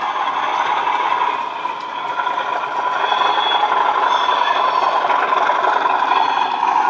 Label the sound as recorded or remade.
recorded